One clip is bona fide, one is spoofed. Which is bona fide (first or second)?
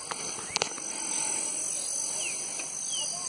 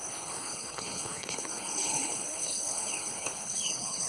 first